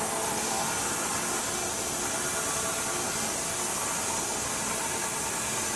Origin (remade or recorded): recorded